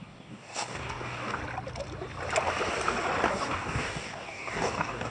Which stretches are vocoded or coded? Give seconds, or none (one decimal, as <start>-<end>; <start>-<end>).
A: 0.0-1.4; 3.3-5.1